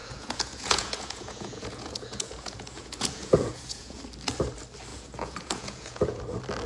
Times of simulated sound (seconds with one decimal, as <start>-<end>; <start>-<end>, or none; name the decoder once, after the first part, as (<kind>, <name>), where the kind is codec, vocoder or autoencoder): 0.0-4.0 (vocoder, Vocos); 4.9-6.2

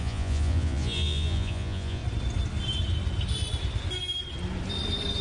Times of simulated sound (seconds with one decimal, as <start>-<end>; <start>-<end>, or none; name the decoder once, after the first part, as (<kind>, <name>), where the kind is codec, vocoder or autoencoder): 0.0-2.0 (vocoder, Vocos)

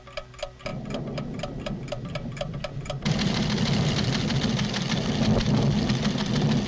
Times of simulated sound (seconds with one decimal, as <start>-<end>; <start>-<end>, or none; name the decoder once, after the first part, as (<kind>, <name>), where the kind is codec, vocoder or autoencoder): 0.7-4.4 (vocoder, BigVGAN v2)

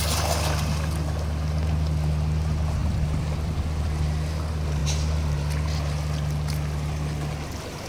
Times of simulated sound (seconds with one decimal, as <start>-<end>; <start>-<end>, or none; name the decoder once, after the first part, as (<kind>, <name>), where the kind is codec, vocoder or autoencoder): 2.8-3.8 (vocoder, BigVGAN v2)

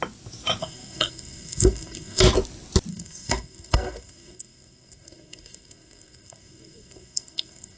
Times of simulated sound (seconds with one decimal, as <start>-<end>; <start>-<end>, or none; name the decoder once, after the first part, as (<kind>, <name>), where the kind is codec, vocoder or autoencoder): 0.6-2.2 (codec, SNAC); 2.9-7.8

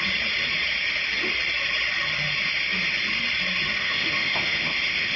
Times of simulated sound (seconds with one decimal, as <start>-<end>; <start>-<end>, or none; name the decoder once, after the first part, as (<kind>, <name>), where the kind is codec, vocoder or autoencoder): 3.8-5.2 (autoencoder, DAC-VAE)

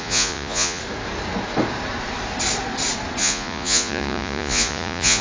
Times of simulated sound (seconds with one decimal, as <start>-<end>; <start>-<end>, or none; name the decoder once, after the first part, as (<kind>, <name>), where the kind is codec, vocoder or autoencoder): 0.0-0.8 (vocoder, Vocos); 3.2-5.2

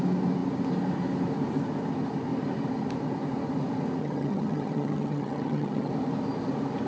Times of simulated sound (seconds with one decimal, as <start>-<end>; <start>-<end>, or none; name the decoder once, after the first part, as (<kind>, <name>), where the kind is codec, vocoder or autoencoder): 4.0-5.9 (vocoder, HiFi-GAN)